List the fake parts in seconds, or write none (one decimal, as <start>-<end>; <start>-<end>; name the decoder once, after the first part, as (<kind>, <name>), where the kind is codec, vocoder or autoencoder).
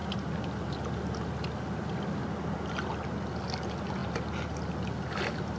none